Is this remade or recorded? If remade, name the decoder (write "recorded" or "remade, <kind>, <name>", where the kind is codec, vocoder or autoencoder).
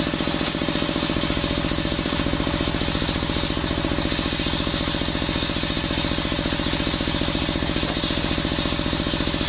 recorded